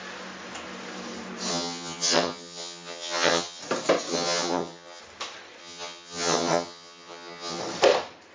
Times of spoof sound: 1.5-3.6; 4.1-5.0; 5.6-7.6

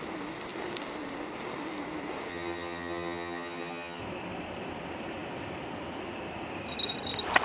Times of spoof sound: 2.3-4.0